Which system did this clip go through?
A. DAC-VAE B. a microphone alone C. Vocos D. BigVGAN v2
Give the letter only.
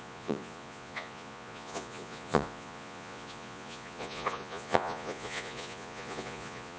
C